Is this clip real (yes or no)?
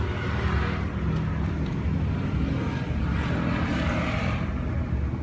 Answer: yes